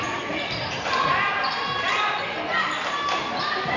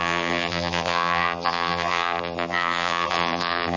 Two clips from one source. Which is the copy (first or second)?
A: second